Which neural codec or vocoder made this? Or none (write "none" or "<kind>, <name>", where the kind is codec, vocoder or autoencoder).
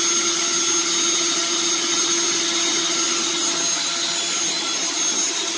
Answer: none